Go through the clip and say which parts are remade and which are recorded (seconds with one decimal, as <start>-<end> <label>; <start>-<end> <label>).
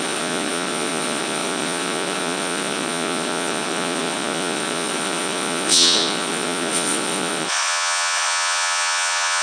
0.0-9.4 remade